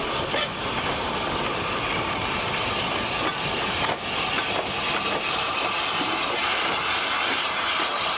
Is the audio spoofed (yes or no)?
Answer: no